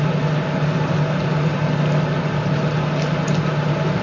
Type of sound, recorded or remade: recorded